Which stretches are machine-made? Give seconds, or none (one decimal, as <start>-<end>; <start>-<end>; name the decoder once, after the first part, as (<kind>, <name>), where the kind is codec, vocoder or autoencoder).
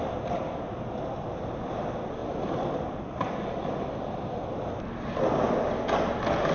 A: none